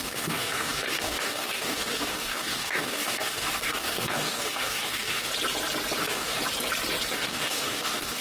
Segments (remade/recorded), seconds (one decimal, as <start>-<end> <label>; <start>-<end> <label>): 0.0-5.3 remade; 5.3-6.0 recorded; 6.0-6.4 remade; 6.4-7.1 recorded; 7.1-8.2 remade